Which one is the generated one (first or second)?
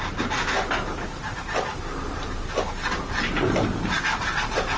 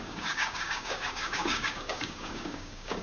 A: second